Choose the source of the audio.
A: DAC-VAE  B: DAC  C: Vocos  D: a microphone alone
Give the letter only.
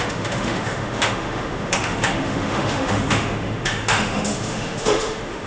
A